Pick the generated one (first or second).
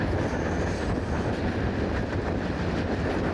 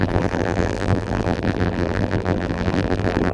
second